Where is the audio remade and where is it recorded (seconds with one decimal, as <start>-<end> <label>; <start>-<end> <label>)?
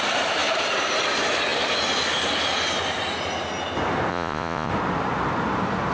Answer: 0.0-4.1 recorded; 4.1-4.7 remade; 4.7-5.9 recorded